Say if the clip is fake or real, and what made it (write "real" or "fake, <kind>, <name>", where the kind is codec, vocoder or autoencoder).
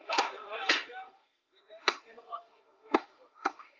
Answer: fake, autoencoder, DAC-VAE